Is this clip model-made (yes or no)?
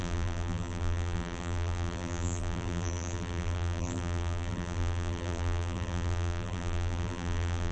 yes